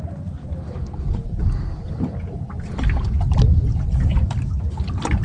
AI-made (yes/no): yes